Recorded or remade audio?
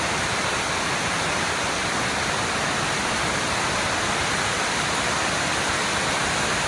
recorded